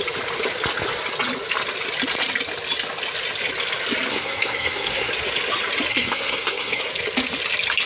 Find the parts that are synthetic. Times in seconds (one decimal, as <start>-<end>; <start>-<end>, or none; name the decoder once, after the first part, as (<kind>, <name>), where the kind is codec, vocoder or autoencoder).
4.1-5.1 (codec, SNAC); 5.9-6.8